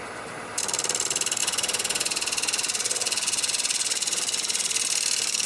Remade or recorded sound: recorded